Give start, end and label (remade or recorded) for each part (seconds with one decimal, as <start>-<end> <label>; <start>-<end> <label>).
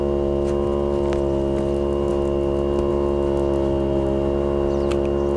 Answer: 0.0-5.4 recorded